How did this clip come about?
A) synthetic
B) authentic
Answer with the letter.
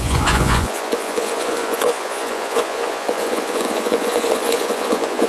A